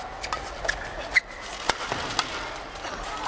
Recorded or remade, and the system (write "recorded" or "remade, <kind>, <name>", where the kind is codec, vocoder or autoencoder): recorded